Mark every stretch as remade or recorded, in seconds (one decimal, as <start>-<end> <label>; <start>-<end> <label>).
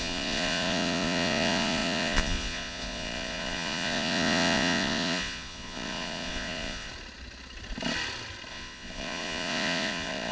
0.0-6.9 remade; 6.9-8.5 recorded; 8.5-10.3 remade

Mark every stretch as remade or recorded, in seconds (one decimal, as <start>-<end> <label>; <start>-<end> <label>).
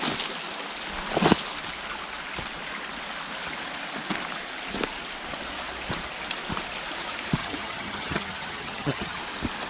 0.0-7.4 recorded; 7.4-9.2 remade; 9.2-9.7 recorded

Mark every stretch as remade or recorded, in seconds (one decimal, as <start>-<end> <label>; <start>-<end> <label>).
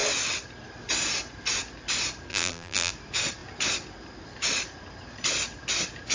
0.0-2.3 recorded; 2.3-2.9 remade; 2.9-6.1 recorded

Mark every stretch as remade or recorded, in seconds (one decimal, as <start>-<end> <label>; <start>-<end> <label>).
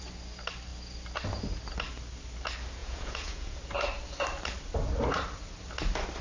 0.0-2.8 recorded; 2.8-3.6 remade; 3.6-6.2 recorded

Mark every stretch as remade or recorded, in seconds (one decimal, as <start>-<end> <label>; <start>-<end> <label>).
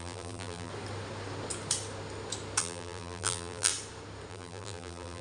0.0-0.7 remade; 0.7-2.6 recorded; 2.6-3.7 remade; 3.7-4.3 recorded; 4.3-5.2 remade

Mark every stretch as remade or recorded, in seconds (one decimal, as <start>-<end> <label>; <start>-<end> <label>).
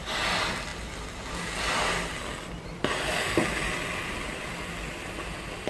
0.0-5.7 recorded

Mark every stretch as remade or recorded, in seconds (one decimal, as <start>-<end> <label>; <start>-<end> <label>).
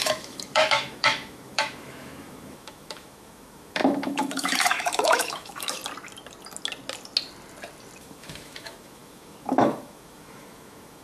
0.0-5.8 remade; 5.8-8.0 recorded; 8.0-11.0 remade